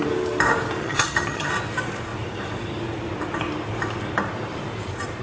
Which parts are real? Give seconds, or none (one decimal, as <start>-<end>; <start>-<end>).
0.0-0.8; 1.5-5.2